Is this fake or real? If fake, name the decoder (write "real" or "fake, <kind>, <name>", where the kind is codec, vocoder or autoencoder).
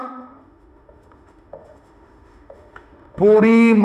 fake, autoencoder, DAC-VAE